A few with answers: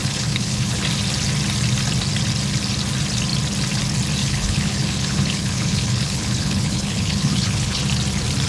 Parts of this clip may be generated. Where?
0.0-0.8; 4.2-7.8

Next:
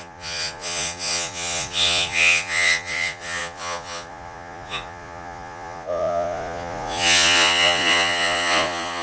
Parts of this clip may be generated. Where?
0.0-9.0

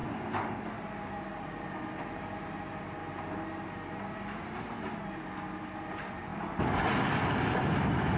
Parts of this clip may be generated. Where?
0.0-3.0; 3.7-8.2